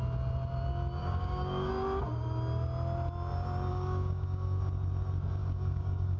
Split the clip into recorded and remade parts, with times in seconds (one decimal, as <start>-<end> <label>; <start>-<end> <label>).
0.0-1.0 recorded; 1.0-1.7 remade; 1.7-3.7 recorded; 3.7-4.6 remade; 4.6-5.4 recorded; 5.4-6.2 remade